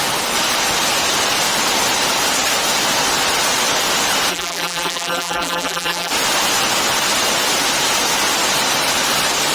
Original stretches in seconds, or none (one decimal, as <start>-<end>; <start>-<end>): 0.0-4.3; 6.1-9.5